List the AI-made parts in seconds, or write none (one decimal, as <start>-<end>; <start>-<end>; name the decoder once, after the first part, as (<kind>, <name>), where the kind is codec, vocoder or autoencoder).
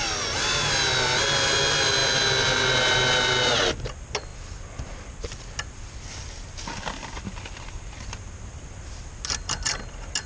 none